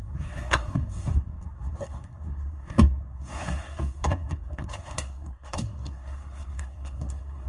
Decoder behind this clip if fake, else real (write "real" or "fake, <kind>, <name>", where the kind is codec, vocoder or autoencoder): fake, codec, SNAC